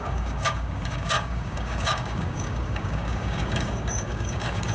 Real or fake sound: fake